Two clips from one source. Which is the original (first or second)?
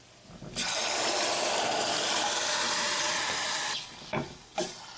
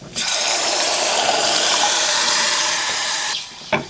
first